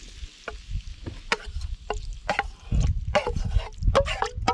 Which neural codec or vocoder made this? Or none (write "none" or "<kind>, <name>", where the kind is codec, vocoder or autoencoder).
none